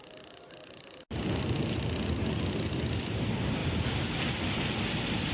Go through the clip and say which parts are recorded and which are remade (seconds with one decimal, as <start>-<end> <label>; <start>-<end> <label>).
0.0-5.3 recorded